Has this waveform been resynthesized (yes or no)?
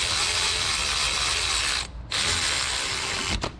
no